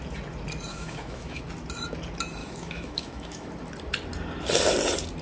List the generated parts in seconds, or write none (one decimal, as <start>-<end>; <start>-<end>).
0.7-1.4; 2.4-3.5